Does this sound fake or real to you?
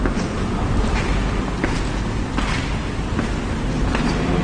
real